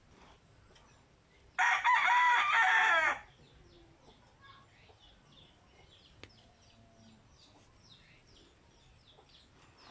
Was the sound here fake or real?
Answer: real